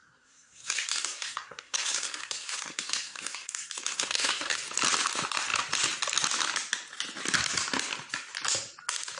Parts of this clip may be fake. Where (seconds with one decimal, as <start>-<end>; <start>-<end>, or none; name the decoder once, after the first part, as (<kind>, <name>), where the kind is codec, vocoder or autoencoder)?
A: 0.0-4.6 (codec, SNAC)